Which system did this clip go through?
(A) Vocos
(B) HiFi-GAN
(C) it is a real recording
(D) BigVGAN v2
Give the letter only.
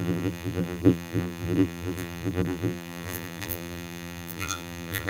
D